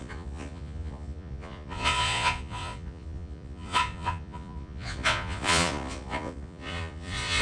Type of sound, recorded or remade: remade